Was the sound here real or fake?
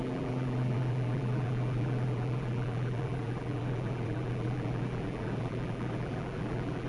fake